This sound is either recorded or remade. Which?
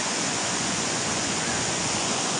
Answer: remade